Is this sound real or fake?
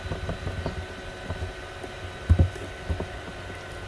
real